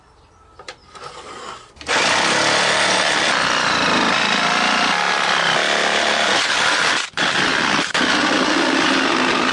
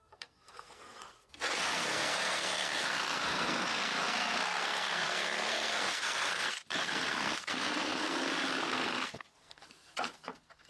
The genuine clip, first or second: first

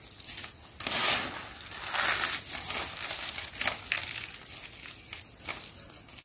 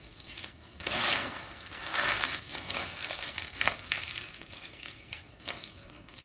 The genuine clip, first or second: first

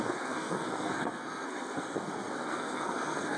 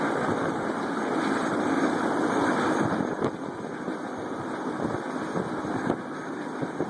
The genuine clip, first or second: second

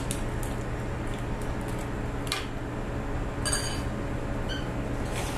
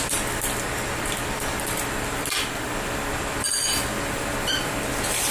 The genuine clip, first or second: first